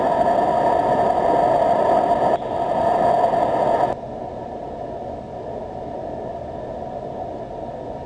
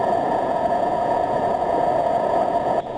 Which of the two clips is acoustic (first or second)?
first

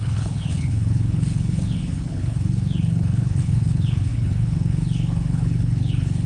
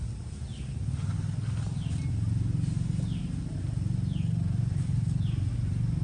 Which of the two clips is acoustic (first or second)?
second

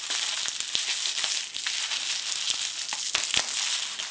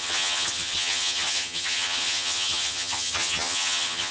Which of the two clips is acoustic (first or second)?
first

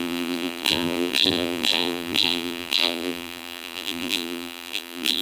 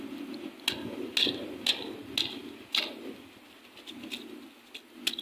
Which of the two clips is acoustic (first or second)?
second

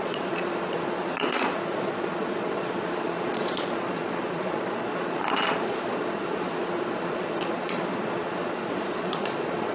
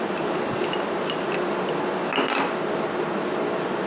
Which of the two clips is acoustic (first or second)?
second